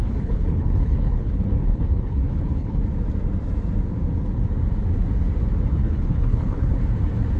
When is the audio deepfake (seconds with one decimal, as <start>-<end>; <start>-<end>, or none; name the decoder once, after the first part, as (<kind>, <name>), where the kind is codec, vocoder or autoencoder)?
0.0-2.8 (codec, HILCodec); 5.8-6.8